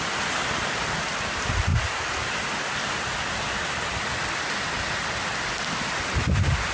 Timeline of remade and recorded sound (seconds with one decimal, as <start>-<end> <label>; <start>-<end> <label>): 0.0-6.7 recorded